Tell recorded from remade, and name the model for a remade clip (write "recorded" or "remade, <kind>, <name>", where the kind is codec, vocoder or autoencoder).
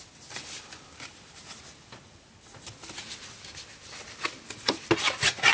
recorded